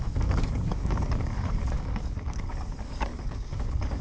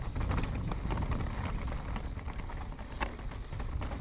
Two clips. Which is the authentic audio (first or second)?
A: second